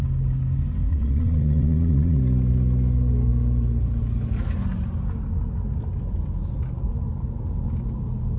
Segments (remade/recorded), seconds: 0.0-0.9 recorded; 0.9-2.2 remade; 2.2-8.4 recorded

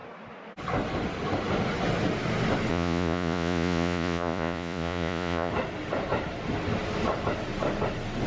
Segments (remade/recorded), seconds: 0.0-2.7 recorded; 2.7-5.5 remade; 5.5-8.3 recorded

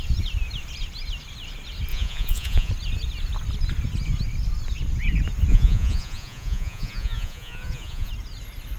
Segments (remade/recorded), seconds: 0.0-1.9 recorded; 1.9-2.7 remade; 2.7-5.5 recorded; 5.5-8.1 remade; 8.1-8.8 recorded

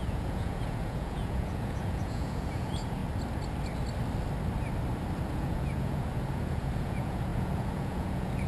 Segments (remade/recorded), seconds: 0.0-3.0 remade; 3.0-5.3 recorded; 5.3-8.5 remade

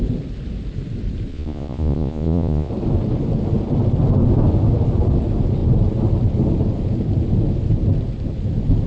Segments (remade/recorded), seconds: 0.0-1.3 recorded; 1.3-2.7 remade; 2.7-8.9 recorded